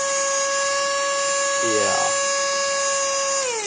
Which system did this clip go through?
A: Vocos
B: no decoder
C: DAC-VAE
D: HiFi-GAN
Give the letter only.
B